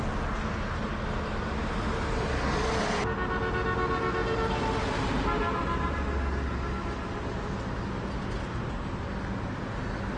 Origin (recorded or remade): recorded